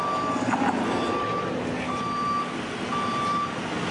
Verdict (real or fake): real